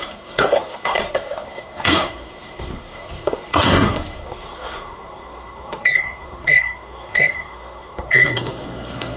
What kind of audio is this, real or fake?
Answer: fake